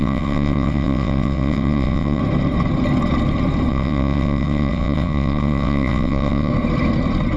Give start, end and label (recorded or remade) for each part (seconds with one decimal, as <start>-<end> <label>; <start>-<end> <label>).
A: 0.0-2.2 remade; 2.2-3.7 recorded; 3.7-6.5 remade; 6.5-7.4 recorded